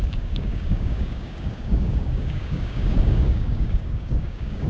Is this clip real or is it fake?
fake